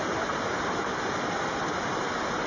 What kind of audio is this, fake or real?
real